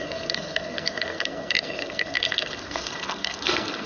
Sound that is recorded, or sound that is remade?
remade